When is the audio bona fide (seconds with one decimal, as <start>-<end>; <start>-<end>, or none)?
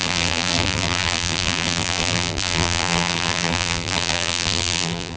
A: none